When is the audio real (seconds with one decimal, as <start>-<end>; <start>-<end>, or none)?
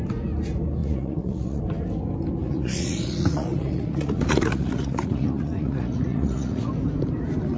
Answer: 0.0-0.8; 1.6-2.4; 6.7-7.6